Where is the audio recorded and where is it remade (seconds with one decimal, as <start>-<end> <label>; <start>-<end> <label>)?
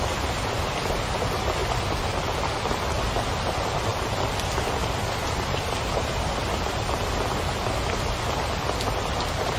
0.0-9.6 recorded